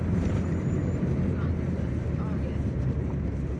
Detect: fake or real fake